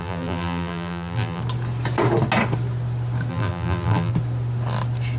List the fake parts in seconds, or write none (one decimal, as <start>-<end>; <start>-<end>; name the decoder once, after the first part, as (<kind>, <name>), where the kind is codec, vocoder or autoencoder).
0.0-1.4 (vocoder, BigVGAN v2); 3.3-4.1